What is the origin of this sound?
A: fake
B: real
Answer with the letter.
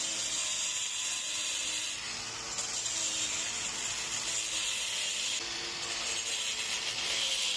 B